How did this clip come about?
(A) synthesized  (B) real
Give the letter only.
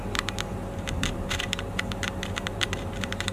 A